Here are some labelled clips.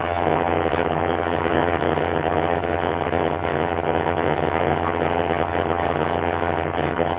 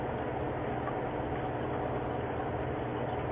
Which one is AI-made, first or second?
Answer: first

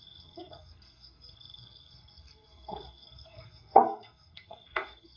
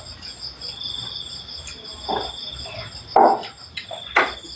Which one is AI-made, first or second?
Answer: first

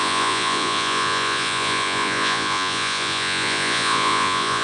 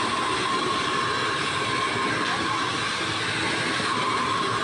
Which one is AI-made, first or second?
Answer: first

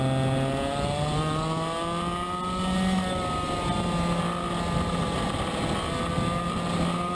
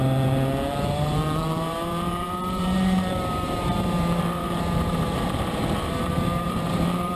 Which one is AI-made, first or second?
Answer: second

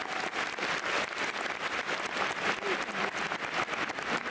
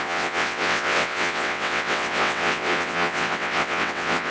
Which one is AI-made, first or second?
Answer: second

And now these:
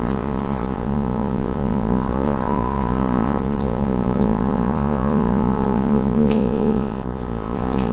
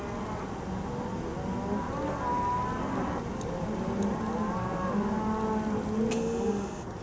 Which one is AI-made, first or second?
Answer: first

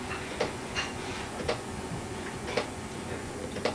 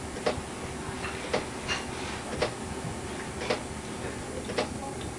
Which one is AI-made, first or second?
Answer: first